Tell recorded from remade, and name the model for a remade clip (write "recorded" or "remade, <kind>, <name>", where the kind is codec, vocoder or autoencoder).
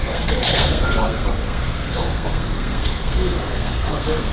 remade, codec, SNAC